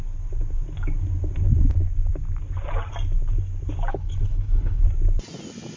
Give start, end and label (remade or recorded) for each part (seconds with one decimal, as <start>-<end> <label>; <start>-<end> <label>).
0.0-3.9 recorded; 3.9-4.8 remade; 4.8-5.8 recorded